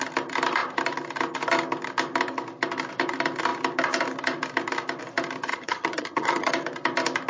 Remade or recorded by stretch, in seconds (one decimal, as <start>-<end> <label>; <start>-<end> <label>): 0.0-5.5 recorded; 5.5-6.5 remade; 6.5-7.3 recorded